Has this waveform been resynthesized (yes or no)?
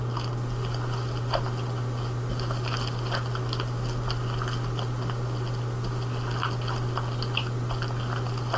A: no